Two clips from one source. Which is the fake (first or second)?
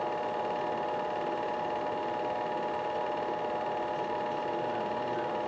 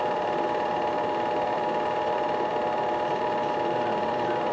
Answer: second